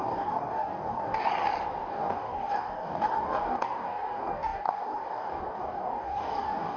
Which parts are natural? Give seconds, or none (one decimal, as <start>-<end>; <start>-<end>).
1.3-1.9